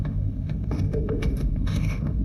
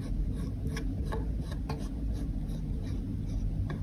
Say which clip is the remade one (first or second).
first